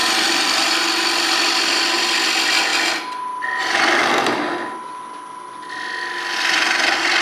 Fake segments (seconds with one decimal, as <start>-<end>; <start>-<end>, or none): 0.0-1.6